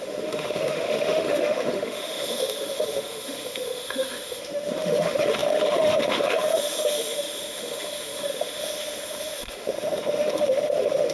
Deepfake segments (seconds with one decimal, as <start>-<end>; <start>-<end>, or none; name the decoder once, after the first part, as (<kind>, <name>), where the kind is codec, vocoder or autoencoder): 0.0-11.1 (autoencoder, DAC-VAE)